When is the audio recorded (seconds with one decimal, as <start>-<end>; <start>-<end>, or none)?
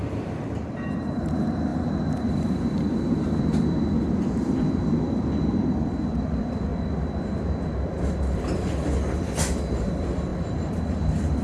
6.7-8.1